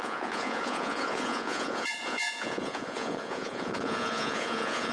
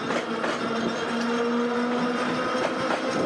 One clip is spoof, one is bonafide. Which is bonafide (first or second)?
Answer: second